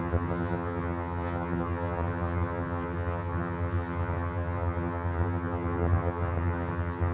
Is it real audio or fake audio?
fake